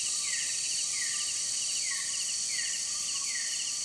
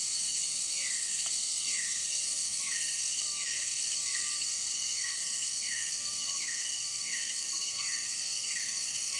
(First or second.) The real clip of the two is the first